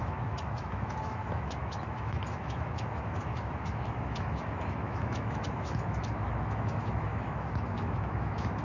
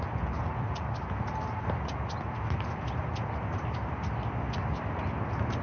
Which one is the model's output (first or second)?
first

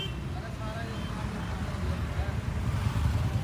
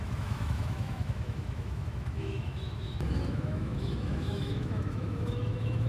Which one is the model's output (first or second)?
second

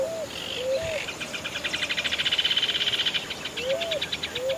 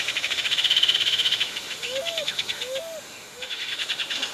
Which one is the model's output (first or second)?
second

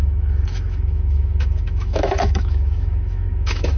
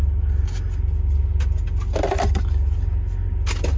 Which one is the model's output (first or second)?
first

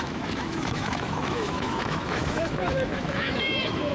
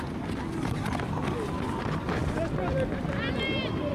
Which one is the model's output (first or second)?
first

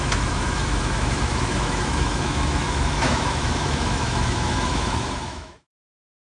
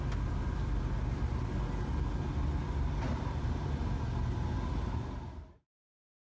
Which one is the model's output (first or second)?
first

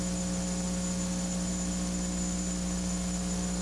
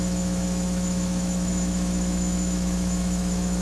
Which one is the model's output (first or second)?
second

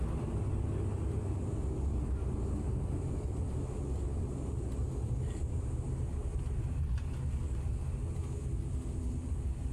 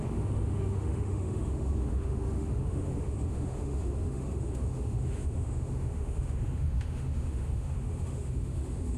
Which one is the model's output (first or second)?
second